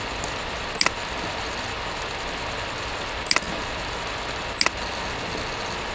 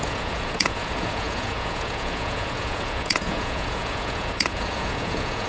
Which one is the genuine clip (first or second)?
first